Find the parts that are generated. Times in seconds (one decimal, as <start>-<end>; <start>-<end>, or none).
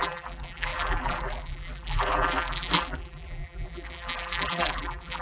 0.0-5.2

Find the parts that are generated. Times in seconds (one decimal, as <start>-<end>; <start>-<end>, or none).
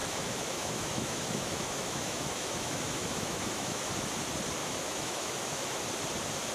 0.0-3.9; 4.6-5.6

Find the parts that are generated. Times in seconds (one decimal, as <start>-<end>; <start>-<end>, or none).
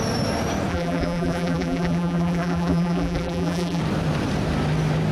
0.7-3.8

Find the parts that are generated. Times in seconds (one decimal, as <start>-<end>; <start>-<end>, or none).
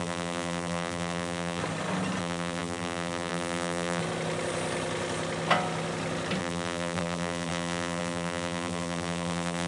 0.0-1.6; 2.2-4.0; 6.4-9.7